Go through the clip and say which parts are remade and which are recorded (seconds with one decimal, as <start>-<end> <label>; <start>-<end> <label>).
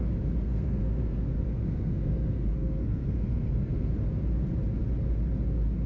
0.0-0.4 recorded; 0.4-3.9 remade; 3.9-5.9 recorded